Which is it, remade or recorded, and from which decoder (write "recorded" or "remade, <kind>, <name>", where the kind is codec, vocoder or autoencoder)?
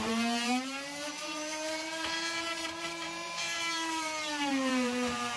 remade, vocoder, BigVGAN v2